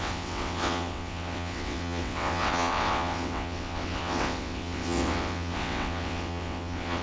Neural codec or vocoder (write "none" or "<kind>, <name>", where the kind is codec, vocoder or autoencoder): vocoder, WaveNeXt